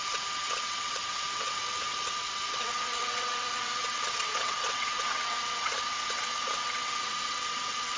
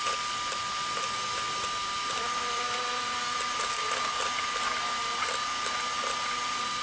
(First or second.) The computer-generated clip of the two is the first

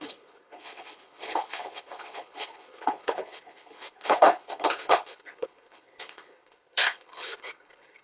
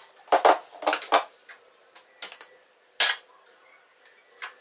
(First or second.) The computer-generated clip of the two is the first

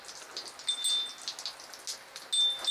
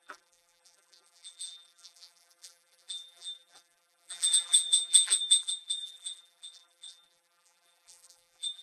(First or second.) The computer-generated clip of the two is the second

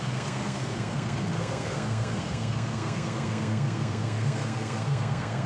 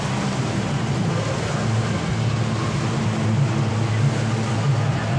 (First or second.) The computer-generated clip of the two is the first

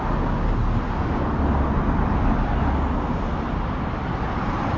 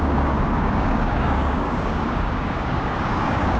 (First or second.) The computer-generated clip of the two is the second